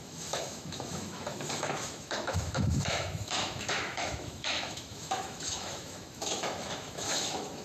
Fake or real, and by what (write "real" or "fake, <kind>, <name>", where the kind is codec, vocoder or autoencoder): fake, autoencoder, DAC-VAE